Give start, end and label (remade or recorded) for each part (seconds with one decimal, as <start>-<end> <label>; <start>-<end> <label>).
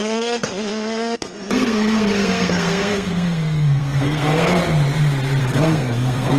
0.0-4.6 remade; 4.6-5.4 recorded; 5.4-6.4 remade